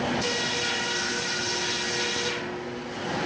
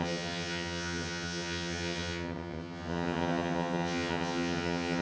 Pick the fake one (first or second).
second